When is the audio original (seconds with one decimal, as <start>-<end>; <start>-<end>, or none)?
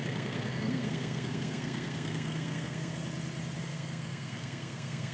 2.9-3.6